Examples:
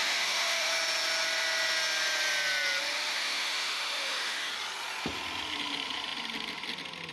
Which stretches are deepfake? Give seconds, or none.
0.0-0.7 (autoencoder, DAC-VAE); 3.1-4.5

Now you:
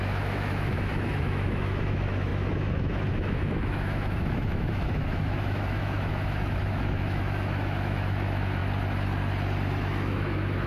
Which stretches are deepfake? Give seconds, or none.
0.0-8.6 (autoencoder, DAC-VAE); 9.8-10.7